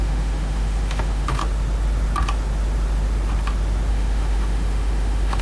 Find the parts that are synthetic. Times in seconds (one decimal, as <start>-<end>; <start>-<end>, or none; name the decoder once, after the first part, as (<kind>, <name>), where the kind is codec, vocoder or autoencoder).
0.0-1.4 (autoencoder, DAC-VAE); 3.9-5.4